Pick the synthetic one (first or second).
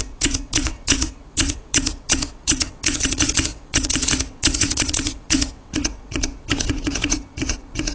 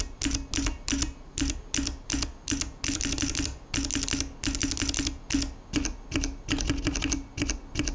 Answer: first